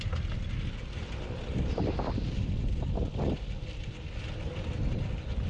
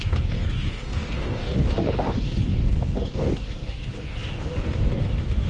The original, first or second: first